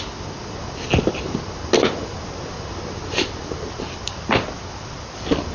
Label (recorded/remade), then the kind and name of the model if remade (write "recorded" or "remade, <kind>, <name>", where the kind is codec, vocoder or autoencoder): recorded